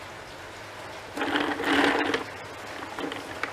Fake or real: real